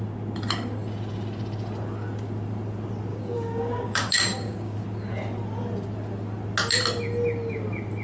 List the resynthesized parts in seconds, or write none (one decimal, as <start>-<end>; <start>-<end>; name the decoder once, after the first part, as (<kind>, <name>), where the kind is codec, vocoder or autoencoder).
3.1-4.8 (codec, DAC)